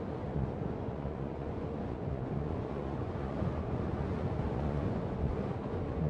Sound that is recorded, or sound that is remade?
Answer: remade